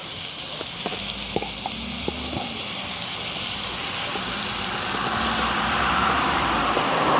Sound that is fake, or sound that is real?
real